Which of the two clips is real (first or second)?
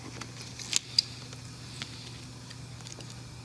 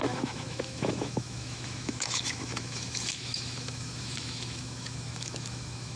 first